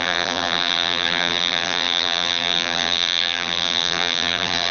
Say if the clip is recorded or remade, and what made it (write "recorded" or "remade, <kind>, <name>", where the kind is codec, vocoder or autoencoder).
remade, vocoder, BigVGAN v2